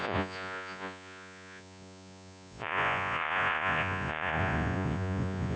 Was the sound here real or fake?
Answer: fake